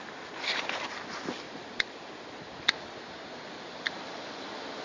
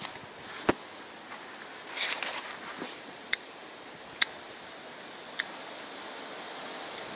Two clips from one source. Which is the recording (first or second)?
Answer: second